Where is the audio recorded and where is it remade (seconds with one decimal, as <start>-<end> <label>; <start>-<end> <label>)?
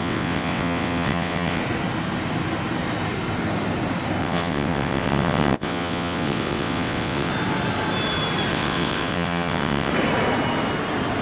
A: 0.0-1.6 remade; 1.6-4.2 recorded; 4.2-7.3 remade; 7.3-8.5 recorded; 8.5-9.9 remade; 9.9-11.2 recorded